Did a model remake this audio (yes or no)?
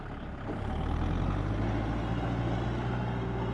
no